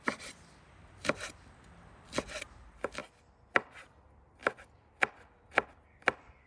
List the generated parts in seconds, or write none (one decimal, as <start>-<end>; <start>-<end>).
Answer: none